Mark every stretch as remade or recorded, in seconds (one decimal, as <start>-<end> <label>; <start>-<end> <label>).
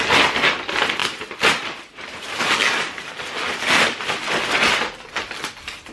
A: 0.0-1.0 recorded; 1.0-2.4 remade; 2.4-5.9 recorded